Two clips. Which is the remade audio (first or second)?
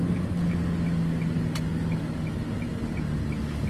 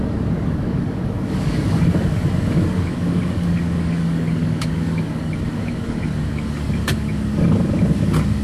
second